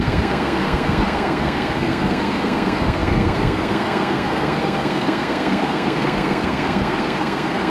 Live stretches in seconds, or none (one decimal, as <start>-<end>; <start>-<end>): none